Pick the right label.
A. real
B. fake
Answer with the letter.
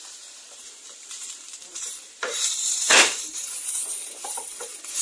B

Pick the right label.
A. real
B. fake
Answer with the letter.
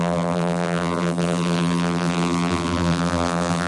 B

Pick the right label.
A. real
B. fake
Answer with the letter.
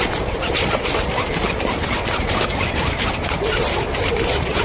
B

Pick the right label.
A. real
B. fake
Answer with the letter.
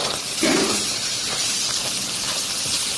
B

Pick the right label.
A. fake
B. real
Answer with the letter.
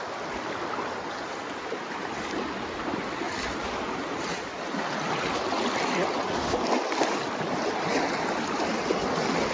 B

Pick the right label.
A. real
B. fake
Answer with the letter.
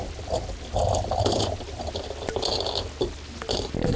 A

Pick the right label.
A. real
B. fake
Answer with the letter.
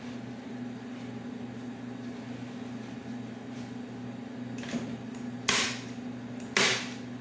A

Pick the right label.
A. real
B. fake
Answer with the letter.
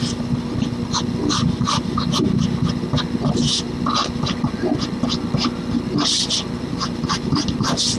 A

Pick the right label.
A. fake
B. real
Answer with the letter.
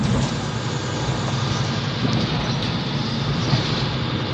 B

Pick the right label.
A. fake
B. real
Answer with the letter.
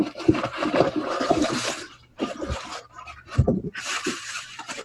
A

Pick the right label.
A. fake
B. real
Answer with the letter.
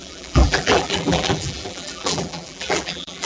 A